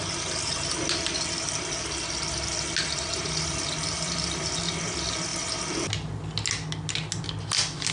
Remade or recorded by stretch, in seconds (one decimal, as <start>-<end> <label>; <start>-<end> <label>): 0.0-7.9 recorded